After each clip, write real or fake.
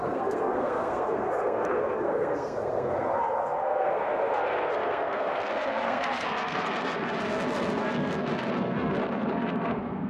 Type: fake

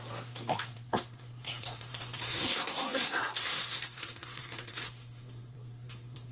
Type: fake